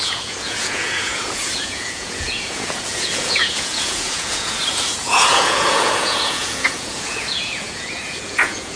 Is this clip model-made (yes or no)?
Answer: yes